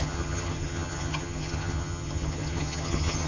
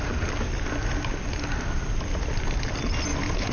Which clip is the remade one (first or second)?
first